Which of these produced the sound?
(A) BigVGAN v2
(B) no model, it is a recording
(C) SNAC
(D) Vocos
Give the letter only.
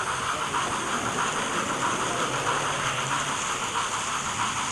B